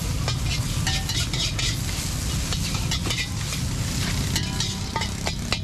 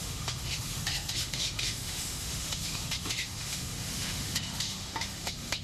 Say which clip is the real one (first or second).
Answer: first